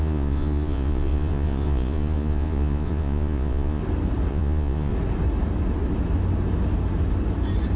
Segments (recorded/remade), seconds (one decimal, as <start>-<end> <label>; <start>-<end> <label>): 0.0-3.8 remade; 3.8-4.3 recorded; 4.3-4.9 remade; 4.9-7.8 recorded